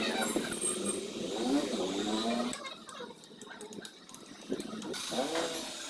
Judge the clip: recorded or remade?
recorded